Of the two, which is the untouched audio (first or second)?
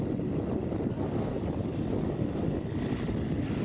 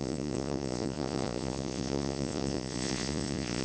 first